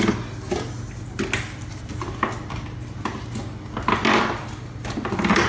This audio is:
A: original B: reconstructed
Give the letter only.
A